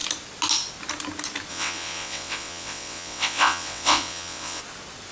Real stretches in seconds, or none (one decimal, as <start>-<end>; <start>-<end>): 0.0-1.5; 4.6-5.1